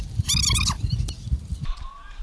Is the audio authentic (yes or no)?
yes